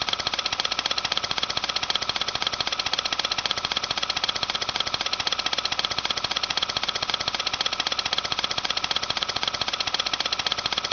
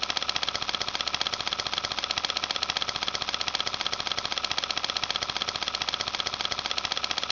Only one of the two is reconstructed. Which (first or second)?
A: first